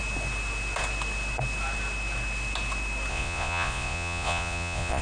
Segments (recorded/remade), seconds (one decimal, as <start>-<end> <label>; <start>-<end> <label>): 0.0-3.1 recorded; 3.1-5.0 remade